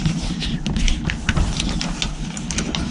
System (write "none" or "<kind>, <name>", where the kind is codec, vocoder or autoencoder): none